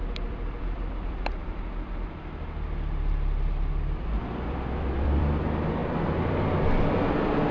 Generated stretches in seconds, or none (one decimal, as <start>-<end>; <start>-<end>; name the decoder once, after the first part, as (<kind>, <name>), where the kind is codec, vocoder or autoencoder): 0.0-1.4 (vocoder, BigVGAN v2); 3.7-7.5